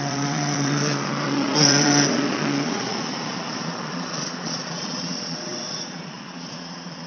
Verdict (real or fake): fake